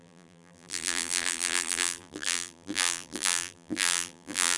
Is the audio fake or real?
fake